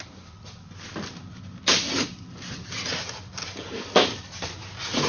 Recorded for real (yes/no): yes